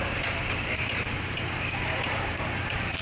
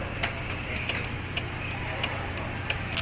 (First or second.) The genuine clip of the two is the second